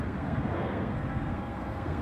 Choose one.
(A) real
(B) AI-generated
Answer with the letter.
B